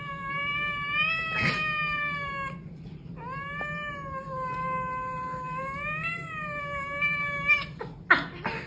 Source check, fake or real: real